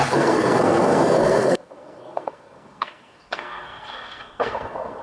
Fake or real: fake